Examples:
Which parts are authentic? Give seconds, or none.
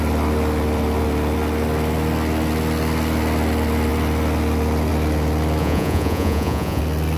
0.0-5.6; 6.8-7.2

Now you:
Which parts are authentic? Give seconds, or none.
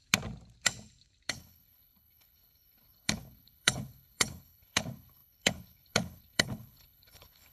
0.0-1.3